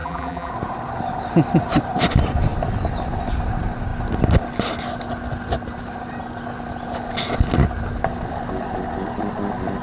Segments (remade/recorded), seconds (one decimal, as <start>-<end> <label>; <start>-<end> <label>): 0.0-0.5 remade; 0.5-9.8 recorded